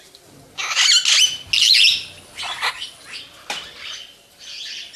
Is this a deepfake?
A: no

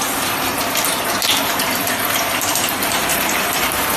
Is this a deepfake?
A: yes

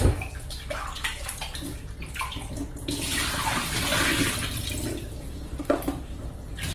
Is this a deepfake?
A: no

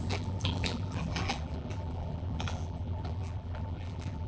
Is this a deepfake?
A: yes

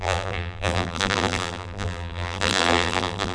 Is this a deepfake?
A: yes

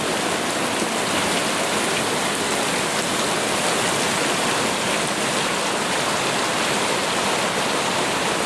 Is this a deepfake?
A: no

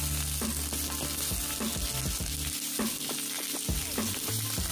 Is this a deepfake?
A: no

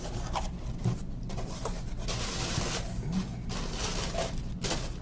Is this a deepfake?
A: no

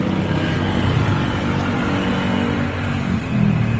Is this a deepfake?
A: no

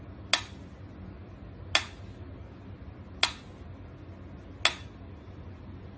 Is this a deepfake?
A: no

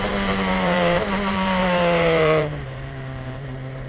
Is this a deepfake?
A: yes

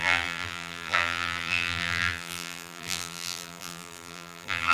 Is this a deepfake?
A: yes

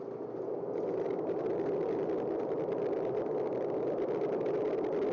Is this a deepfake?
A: no